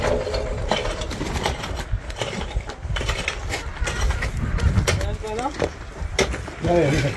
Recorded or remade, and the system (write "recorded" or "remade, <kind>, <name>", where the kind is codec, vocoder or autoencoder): recorded